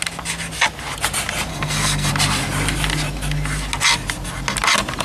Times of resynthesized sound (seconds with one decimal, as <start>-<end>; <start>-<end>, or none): 1.5-2.1